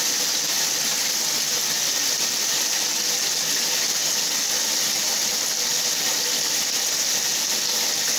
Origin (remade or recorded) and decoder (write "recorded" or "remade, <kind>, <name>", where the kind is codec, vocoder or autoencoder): recorded